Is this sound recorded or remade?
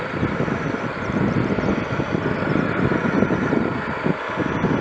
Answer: recorded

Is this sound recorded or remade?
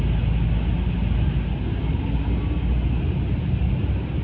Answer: recorded